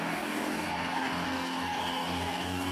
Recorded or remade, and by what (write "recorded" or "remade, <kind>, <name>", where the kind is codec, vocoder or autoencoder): remade, codec, DAC